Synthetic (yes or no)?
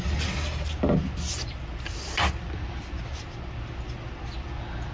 no